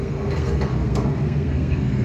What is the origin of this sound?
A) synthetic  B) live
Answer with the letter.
A